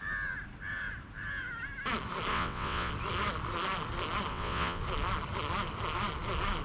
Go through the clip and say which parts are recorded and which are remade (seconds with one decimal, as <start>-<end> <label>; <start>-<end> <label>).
0.0-2.3 recorded; 2.3-2.9 remade; 2.9-4.3 recorded; 4.3-4.8 remade; 4.8-6.6 recorded